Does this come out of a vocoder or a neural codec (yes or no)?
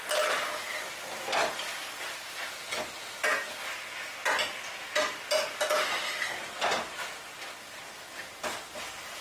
no